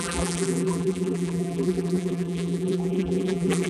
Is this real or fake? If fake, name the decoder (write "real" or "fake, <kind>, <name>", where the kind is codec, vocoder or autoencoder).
fake, vocoder, BigVGAN v2